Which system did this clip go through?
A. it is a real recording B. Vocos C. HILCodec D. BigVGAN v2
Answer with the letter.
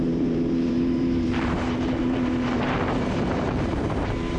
D